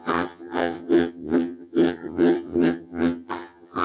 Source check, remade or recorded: remade